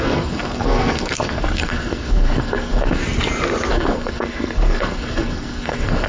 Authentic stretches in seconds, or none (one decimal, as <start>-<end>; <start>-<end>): 3.0-3.7